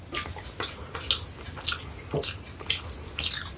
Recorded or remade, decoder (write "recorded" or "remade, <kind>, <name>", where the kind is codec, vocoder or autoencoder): recorded